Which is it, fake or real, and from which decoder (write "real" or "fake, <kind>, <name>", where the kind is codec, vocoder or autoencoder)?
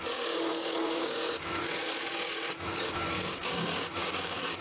fake, codec, DAC